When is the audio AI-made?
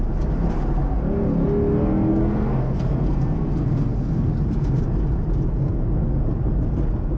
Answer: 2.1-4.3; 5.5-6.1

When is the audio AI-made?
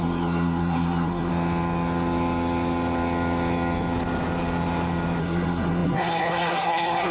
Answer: 0.0-1.3; 5.2-7.1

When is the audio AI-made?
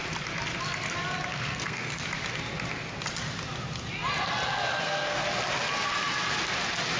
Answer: 1.3-2.0; 4.8-5.2